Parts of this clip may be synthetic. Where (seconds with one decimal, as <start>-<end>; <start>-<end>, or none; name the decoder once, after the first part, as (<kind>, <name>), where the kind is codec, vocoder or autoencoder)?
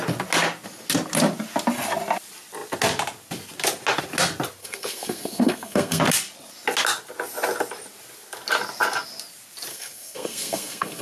4.6-6.0 (codec, SNAC); 9.7-11.0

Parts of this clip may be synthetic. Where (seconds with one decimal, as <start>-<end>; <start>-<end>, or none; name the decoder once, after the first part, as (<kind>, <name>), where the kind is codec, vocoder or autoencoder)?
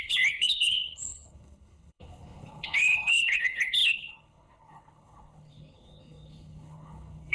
0.0-7.3 (codec, HILCodec)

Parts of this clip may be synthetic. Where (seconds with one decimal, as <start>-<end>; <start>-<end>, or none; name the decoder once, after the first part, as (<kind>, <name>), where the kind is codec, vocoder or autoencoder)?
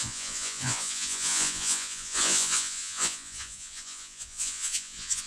0.0-5.3 (vocoder, Vocos)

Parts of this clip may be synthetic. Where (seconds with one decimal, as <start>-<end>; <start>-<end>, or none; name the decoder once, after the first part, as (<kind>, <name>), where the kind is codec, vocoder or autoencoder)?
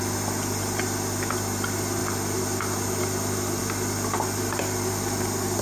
none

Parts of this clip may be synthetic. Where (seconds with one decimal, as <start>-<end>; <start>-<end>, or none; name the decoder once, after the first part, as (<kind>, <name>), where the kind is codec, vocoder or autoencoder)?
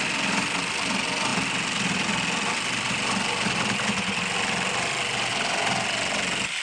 none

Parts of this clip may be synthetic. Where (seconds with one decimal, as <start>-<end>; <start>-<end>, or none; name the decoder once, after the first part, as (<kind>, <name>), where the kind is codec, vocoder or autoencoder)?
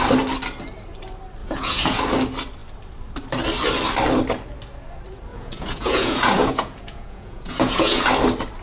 1.4-2.0 (vocoder, Vocos); 5.3-8.0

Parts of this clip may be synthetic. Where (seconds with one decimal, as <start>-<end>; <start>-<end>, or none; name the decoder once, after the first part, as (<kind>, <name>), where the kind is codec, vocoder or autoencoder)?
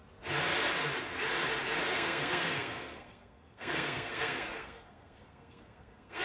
1.8-6.2 (codec, SNAC)